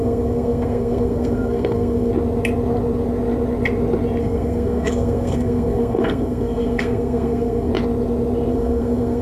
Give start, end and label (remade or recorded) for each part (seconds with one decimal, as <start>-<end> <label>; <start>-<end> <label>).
0.0-2.1 remade; 2.1-4.2 recorded; 4.2-7.7 remade; 7.7-8.5 recorded; 8.5-9.2 remade

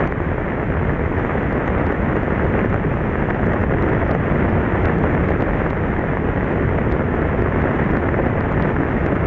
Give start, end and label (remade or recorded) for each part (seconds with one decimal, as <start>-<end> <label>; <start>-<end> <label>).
0.0-9.3 recorded

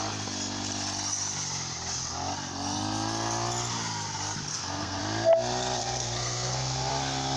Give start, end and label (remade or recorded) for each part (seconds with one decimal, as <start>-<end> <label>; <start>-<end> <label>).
0.0-4.5 recorded; 4.5-5.0 remade; 5.0-5.8 recorded; 5.8-6.9 remade; 6.9-7.4 recorded

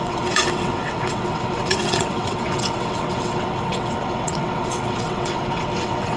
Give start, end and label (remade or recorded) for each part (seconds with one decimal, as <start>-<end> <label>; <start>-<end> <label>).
0.0-6.2 remade

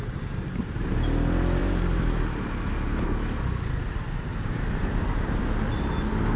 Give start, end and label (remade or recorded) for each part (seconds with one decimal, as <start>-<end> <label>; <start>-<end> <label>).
0.0-1.6 recorded; 1.6-2.7 remade; 2.7-4.3 recorded; 4.3-5.4 remade; 5.4-6.4 recorded